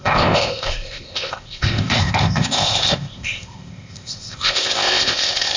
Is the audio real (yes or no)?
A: no